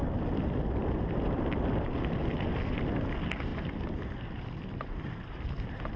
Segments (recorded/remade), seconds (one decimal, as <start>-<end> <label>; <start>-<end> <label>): 0.0-3.5 recorded; 3.5-4.6 remade; 4.6-6.0 recorded